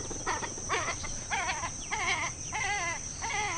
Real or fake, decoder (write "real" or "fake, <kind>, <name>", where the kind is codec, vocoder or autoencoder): real